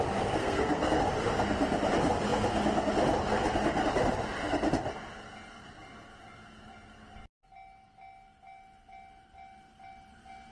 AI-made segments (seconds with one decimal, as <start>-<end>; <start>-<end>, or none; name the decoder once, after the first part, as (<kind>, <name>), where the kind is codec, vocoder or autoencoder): 0.4-1.0 (codec, SNAC)